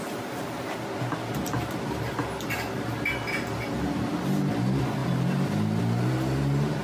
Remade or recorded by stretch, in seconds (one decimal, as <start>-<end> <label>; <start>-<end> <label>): 0.0-6.8 recorded